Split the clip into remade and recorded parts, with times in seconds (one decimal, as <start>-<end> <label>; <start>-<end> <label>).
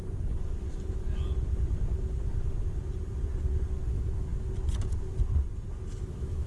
0.0-3.9 recorded; 3.9-4.3 remade; 4.3-6.0 recorded; 6.0-6.5 remade